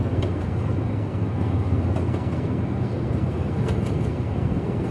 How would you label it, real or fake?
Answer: fake